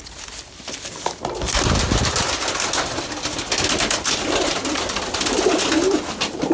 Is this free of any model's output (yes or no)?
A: yes